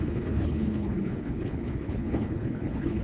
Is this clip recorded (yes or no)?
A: no